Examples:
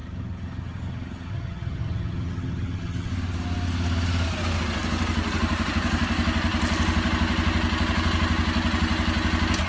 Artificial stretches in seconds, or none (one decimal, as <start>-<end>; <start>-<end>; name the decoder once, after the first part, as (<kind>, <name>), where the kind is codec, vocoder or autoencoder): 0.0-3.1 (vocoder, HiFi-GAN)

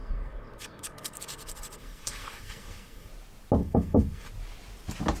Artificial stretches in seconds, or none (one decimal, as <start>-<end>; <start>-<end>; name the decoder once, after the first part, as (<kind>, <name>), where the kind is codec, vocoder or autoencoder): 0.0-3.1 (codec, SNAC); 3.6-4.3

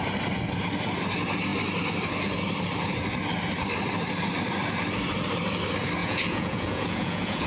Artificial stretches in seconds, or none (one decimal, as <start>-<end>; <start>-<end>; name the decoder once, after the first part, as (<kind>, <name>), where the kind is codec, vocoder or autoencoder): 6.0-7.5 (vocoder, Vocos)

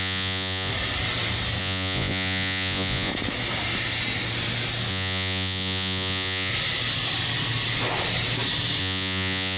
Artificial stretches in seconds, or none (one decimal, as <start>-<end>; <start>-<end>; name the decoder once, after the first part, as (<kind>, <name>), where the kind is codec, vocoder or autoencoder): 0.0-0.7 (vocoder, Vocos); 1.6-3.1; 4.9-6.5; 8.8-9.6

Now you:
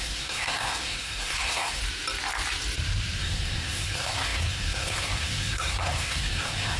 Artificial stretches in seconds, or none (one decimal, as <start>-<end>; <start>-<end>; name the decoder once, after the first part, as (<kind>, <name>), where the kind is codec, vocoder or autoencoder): 0.0-1.8 (codec, SNAC); 3.2-6.8

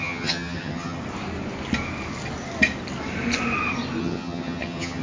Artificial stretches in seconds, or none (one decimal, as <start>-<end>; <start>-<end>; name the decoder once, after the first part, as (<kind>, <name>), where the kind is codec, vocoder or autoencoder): 0.0-1.0 (vocoder, HiFi-GAN); 4.0-5.0